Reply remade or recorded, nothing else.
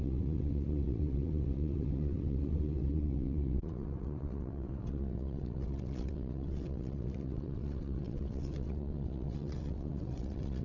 remade